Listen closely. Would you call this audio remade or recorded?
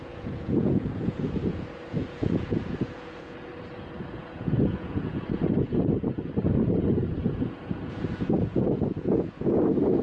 remade